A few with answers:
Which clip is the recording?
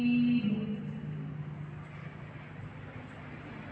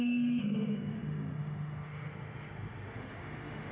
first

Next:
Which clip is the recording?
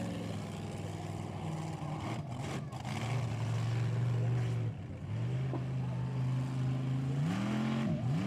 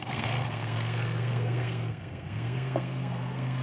first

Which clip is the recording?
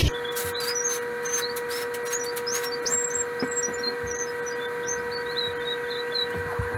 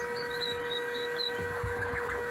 first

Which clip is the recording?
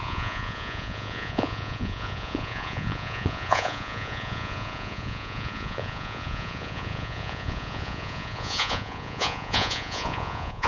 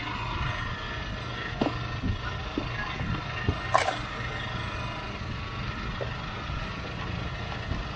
second